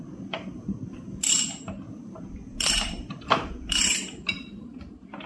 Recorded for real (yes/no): no